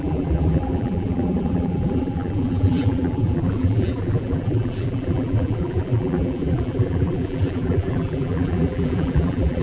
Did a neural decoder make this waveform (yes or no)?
yes